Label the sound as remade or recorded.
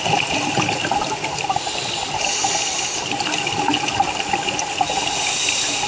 recorded